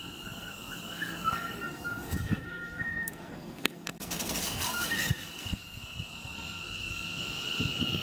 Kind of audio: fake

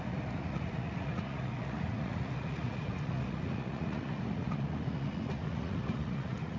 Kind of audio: fake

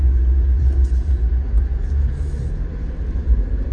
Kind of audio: fake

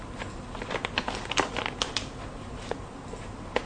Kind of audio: real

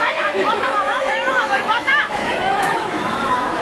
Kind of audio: fake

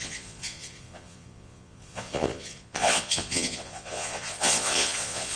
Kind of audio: fake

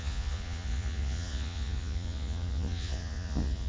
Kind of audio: fake